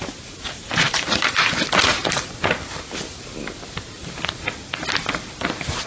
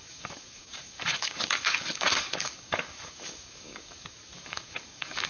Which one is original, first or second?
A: first